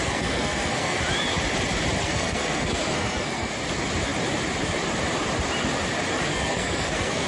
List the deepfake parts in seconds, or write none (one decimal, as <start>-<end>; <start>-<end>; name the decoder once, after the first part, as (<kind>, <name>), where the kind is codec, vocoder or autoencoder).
0.0-1.0 (codec, SNAC); 2.0-3.5; 6.3-7.3